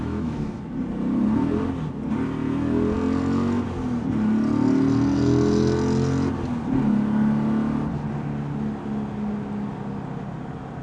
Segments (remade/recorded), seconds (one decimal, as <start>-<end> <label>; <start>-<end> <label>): 0.0-0.6 remade; 0.6-10.8 recorded

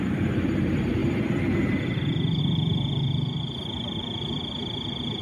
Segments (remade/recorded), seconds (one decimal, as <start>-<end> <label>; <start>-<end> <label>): 0.0-5.2 remade

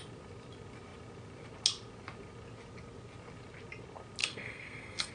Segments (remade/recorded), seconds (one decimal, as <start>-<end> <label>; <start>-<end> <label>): 0.0-4.2 recorded; 4.2-5.1 remade

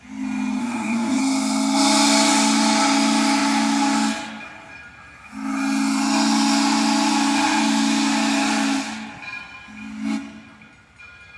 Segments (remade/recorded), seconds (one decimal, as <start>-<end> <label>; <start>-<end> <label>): 0.0-0.6 recorded; 0.6-1.2 remade; 1.2-11.4 recorded

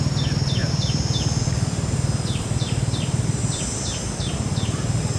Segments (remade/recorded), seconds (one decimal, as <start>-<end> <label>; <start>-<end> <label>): 0.0-0.6 recorded; 0.6-3.7 remade; 3.7-5.2 recorded